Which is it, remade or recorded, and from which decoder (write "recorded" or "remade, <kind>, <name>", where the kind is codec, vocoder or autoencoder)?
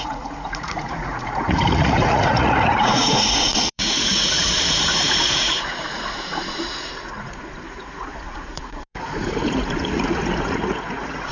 remade, vocoder, Vocos